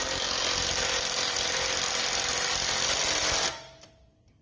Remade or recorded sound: recorded